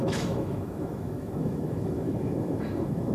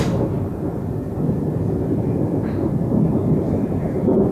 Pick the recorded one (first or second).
second